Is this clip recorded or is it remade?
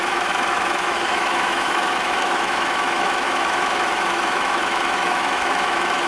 remade